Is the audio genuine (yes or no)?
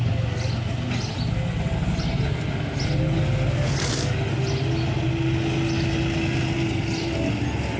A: yes